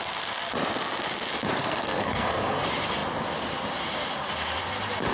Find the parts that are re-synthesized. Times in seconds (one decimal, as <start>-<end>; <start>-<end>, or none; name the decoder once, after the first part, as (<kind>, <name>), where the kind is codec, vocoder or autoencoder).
1.6-2.6 (codec, SNAC)